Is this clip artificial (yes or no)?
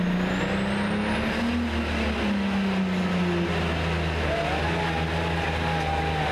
no